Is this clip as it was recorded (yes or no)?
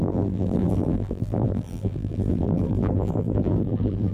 no